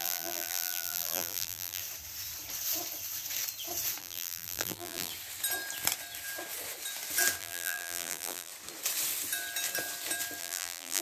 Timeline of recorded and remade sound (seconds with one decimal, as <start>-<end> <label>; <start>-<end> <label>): 0.0-1.8 remade; 1.8-4.0 recorded; 4.0-5.1 remade; 5.1-7.4 recorded; 7.4-8.5 remade; 8.5-10.4 recorded; 10.4-11.0 remade